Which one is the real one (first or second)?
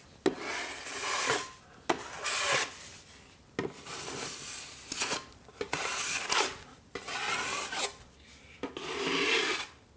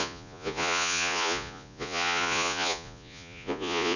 first